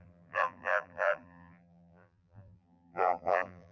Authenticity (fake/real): fake